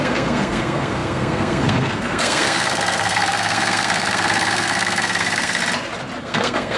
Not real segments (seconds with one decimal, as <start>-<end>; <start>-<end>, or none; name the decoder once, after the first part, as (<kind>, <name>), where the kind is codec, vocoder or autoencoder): 0.0-5.6 (codec, SNAC); 6.2-6.8